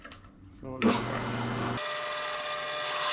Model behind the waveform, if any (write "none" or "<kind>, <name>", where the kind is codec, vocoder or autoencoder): none